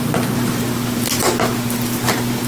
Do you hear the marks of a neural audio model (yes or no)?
no